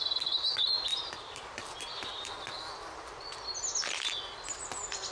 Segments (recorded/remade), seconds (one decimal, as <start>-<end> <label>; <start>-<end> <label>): 0.0-0.9 recorded; 0.9-2.3 remade; 2.3-5.1 recorded